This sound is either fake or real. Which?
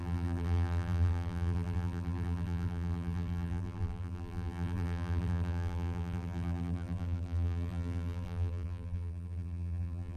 fake